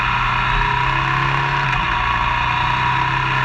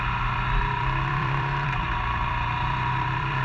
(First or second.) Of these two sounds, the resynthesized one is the second